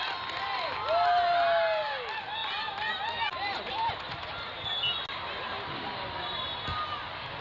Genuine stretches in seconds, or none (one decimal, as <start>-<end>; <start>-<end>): 0.0-3.3; 3.9-7.4